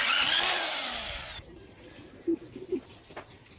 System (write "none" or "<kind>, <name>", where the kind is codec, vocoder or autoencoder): none